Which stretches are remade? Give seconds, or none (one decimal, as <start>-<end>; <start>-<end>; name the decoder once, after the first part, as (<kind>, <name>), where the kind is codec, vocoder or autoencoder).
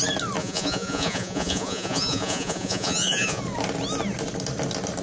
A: 0.4-3.4 (vocoder, Vocos)